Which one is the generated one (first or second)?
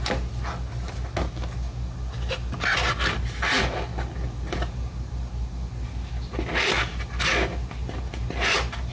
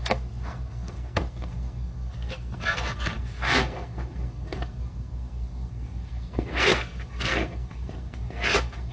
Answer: second